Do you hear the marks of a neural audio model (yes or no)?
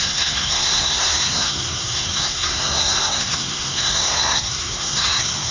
yes